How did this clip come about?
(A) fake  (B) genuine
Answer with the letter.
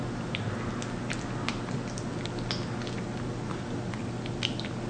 B